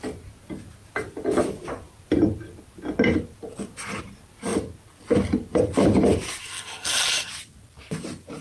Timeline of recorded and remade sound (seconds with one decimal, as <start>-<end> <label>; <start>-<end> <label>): 0.0-6.4 recorded; 6.4-7.3 remade; 7.3-8.4 recorded